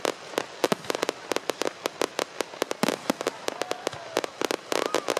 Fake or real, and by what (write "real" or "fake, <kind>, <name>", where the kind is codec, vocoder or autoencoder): real